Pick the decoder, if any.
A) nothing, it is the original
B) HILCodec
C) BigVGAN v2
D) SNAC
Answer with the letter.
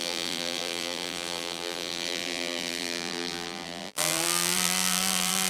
C